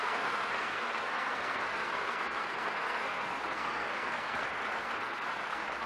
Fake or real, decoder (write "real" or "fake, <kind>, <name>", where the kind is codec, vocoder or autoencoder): fake, codec, SNAC